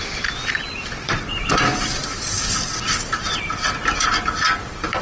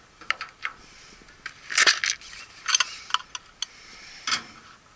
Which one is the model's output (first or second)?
first